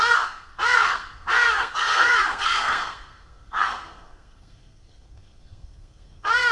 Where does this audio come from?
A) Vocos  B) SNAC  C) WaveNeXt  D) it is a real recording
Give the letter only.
B